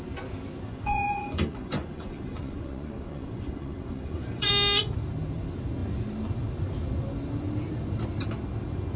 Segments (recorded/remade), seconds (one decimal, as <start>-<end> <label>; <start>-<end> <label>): 0.0-0.7 recorded; 0.7-4.5 remade; 4.5-9.0 recorded